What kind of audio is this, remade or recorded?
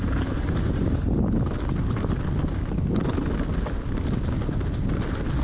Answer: recorded